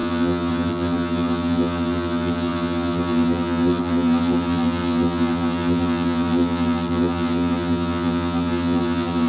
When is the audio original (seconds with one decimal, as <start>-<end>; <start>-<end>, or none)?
none